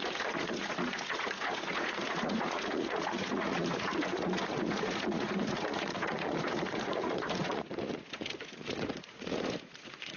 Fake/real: fake